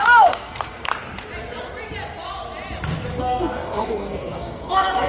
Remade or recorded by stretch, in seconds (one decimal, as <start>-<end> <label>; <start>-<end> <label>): 0.0-0.9 remade; 0.9-3.2 recorded; 3.2-5.1 remade